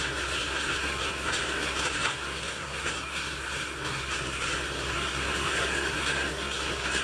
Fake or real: fake